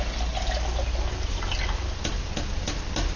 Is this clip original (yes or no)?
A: yes